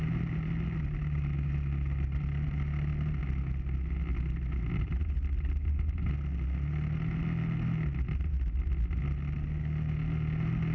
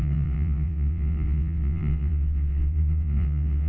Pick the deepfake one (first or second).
second